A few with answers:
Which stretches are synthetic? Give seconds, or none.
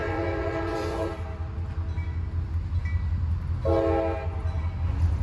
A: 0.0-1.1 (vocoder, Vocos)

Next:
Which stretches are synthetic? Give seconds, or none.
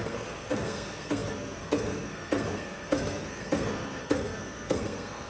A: 0.0-5.3 (codec, SNAC)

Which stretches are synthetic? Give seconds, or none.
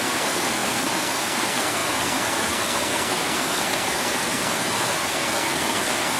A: 0.0-6.2 (codec, SNAC)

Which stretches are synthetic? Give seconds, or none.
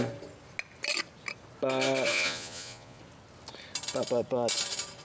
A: 2.1-3.0 (vocoder, Vocos)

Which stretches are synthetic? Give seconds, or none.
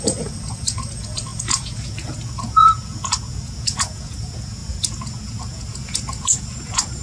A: 0.0-7.0 (vocoder, Vocos)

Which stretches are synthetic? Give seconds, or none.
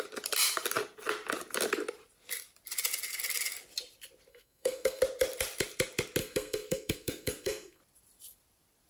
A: 4.3-5.0 (codec, SNAC); 6.2-7.8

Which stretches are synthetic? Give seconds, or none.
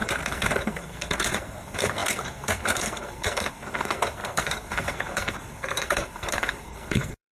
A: 0.0-7.3 (codec, SNAC)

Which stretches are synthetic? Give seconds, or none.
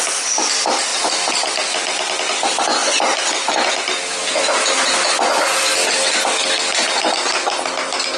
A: none